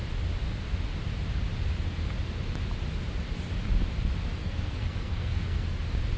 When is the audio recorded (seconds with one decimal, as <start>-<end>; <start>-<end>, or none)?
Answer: 0.0-4.4; 5.8-6.2